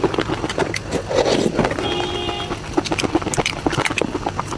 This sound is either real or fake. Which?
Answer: real